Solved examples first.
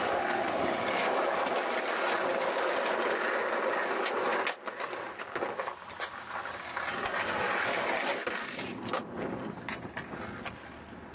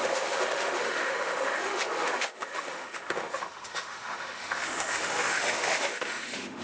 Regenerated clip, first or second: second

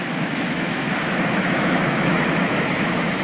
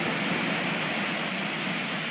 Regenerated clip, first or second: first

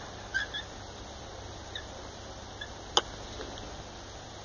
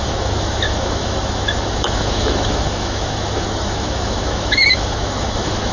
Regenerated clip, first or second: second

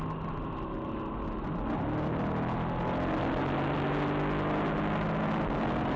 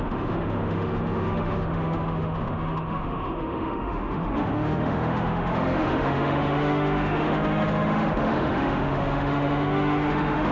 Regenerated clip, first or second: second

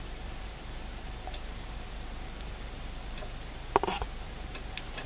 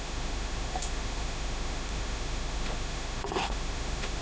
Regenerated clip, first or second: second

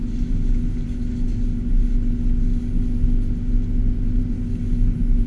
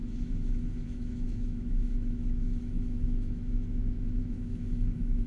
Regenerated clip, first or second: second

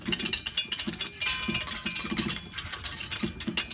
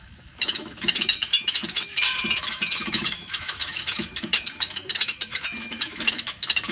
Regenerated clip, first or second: second